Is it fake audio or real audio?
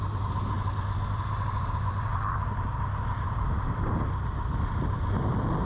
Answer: real